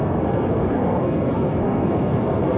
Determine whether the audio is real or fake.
fake